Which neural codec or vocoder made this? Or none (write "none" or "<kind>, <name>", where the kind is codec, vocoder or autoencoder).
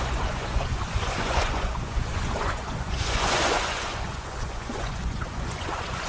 vocoder, Vocos